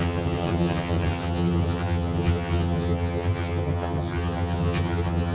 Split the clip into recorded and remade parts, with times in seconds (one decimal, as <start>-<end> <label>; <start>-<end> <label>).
0.0-5.3 remade